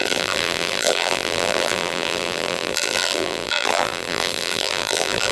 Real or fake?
fake